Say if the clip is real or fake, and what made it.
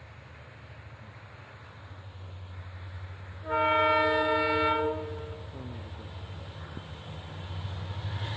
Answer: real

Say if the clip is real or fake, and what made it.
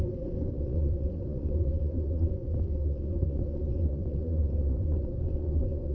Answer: fake, vocoder, Vocos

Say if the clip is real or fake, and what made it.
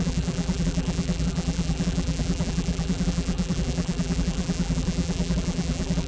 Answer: fake, vocoder, BigVGAN v2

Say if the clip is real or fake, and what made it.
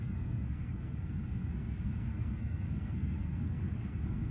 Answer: fake, codec, SNAC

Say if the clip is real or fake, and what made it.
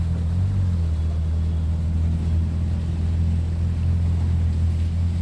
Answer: real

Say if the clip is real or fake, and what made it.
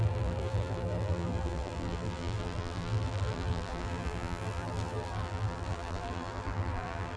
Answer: fake, vocoder, BigVGAN v2